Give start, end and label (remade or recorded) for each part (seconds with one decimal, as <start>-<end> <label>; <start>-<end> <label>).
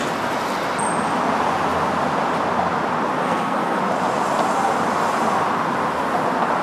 0.0-3.2 recorded; 3.2-3.8 remade; 3.8-6.6 recorded